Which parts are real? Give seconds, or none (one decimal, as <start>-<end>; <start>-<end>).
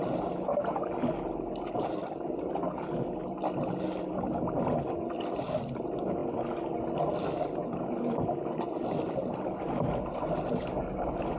0.0-11.4